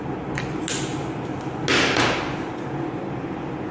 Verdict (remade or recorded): recorded